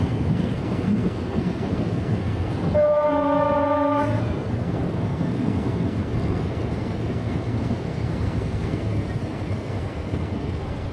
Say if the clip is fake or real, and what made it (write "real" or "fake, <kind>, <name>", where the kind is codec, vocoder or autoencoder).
fake, codec, SNAC